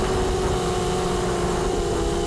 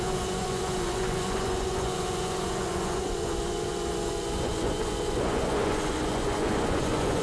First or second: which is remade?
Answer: second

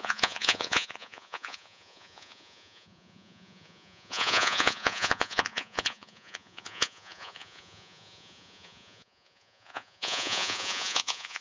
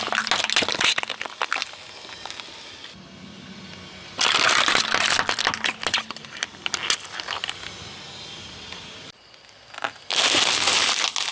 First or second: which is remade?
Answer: first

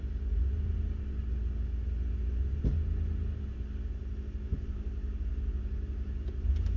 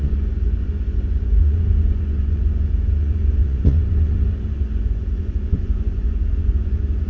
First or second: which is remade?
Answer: second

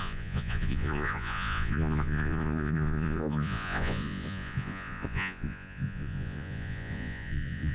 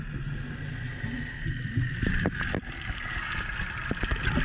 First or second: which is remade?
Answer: first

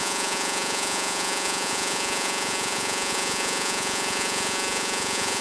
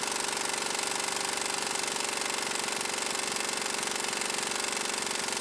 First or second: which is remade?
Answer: first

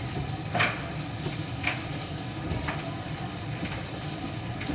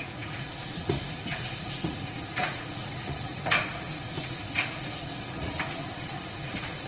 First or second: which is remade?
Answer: second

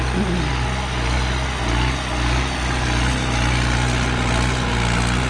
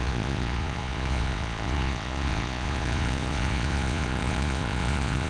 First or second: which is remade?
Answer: second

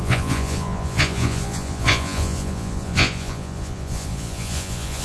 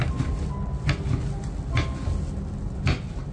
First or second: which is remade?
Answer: first